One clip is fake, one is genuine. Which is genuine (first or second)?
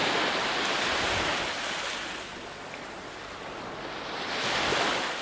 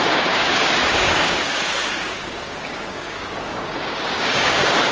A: first